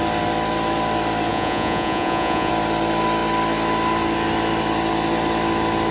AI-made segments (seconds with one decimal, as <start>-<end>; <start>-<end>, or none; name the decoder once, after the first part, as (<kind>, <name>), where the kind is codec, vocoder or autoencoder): 1.3-2.5 (vocoder, Vocos)